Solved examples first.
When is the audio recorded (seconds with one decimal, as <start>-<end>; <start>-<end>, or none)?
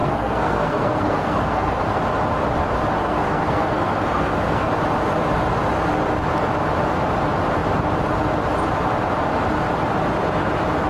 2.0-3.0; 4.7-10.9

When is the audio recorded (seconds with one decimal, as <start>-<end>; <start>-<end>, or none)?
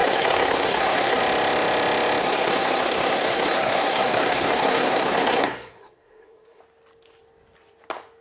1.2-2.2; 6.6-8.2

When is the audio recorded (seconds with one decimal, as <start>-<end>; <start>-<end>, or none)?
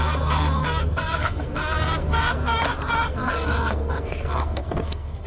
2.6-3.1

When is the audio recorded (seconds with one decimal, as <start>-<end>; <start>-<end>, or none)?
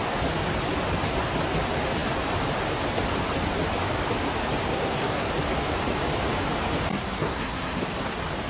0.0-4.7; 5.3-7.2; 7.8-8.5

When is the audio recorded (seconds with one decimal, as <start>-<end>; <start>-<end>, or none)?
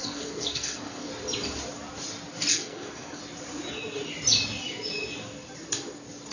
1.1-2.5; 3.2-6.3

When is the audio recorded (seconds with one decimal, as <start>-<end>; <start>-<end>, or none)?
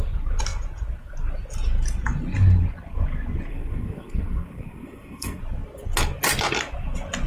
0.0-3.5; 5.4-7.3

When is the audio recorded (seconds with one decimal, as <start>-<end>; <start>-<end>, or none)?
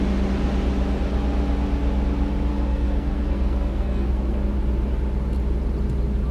0.0-2.5; 4.4-6.3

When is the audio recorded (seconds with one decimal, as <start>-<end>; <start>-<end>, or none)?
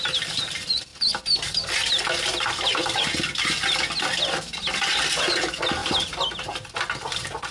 0.0-7.5